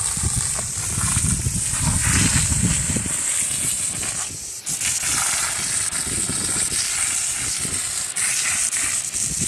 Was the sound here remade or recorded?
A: remade